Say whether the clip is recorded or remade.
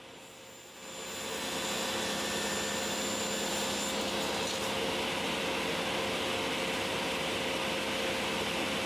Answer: recorded